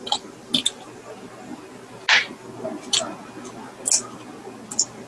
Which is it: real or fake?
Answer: real